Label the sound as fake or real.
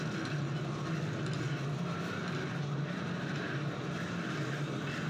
real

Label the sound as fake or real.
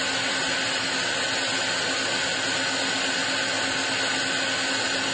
real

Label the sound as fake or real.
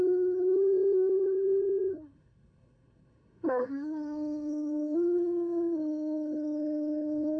fake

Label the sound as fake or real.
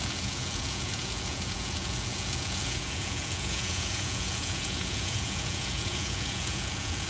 fake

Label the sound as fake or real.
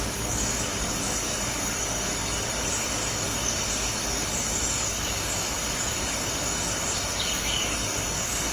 fake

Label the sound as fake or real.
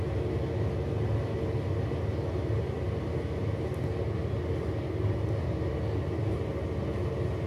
real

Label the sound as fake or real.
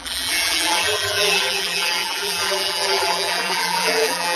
fake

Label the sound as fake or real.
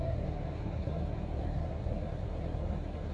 fake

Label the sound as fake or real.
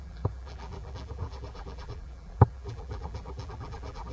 fake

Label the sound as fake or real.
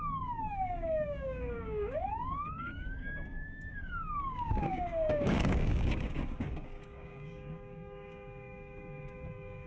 fake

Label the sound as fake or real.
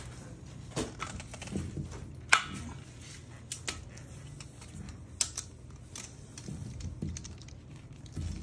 real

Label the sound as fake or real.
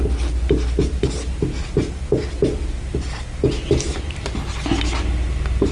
real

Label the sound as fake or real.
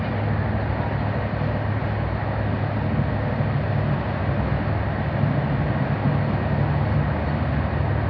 real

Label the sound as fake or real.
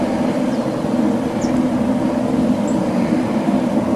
fake